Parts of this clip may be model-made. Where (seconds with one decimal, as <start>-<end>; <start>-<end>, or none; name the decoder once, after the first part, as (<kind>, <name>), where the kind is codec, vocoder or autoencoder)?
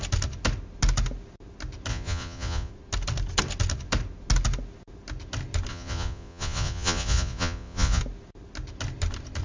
1.9-2.7 (vocoder, Vocos); 5.7-8.0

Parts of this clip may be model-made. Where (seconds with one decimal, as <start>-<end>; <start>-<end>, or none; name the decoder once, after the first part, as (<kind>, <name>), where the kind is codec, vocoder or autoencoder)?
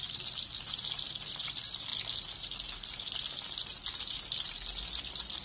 none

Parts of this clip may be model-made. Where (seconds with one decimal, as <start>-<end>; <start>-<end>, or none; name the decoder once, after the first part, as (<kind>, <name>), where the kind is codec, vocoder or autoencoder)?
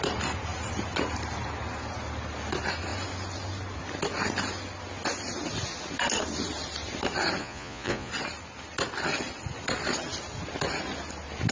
7.4-8.1 (vocoder, Vocos)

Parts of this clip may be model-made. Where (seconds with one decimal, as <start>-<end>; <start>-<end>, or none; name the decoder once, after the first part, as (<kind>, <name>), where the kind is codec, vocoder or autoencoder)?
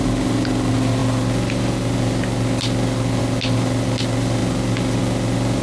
none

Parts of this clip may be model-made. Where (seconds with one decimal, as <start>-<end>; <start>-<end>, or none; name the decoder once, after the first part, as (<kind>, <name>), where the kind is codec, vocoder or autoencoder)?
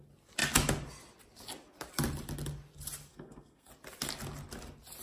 3.1-3.7 (codec, SNAC)